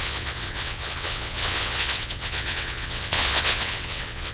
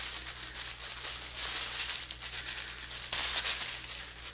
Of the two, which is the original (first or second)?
second